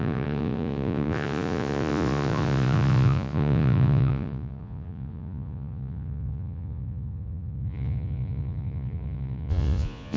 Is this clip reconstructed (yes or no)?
yes